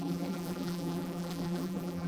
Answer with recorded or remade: remade